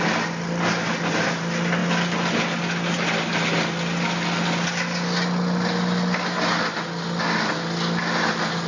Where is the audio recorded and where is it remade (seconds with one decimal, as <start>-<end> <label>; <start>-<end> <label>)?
0.0-8.7 recorded